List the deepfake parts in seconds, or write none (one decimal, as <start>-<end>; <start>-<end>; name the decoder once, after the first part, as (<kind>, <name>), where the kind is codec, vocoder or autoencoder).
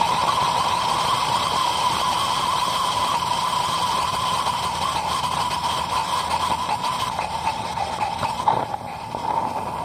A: 1.2-4.3 (vocoder, BigVGAN v2)